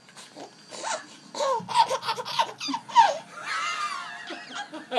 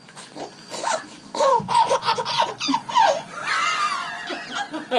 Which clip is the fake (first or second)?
second